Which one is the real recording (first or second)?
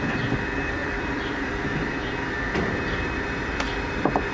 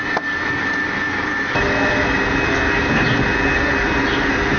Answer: second